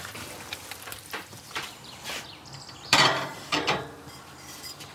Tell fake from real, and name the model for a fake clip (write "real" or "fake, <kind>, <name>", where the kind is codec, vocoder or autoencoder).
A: fake, vocoder, BigVGAN v2